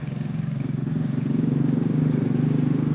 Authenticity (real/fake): fake